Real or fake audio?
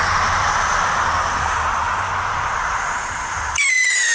real